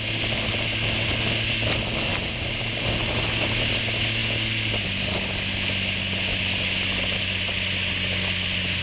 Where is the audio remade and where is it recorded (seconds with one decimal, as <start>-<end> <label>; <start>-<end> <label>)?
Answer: 0.0-2.1 recorded; 2.1-2.9 remade; 2.9-8.8 recorded